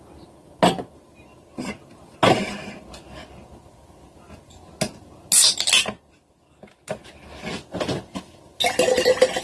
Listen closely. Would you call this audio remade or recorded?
recorded